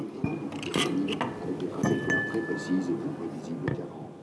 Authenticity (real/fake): real